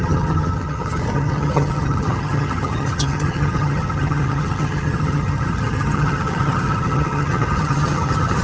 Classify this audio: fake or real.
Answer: fake